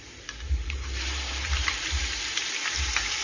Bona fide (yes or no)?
no